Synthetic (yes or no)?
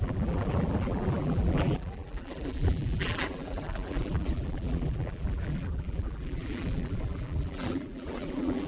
yes